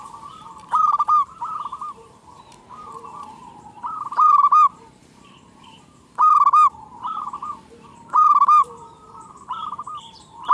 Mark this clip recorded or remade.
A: remade